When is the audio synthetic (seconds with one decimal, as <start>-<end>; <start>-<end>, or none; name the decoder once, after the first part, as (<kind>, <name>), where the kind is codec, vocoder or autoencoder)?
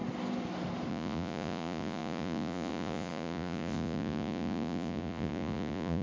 0.9-6.0 (vocoder, Vocos)